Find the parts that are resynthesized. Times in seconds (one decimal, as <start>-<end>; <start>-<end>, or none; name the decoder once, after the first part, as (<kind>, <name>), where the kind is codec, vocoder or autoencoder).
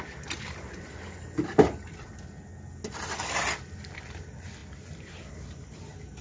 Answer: 1.5-2.1 (vocoder, BigVGAN v2)